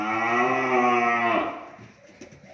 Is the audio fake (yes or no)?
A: no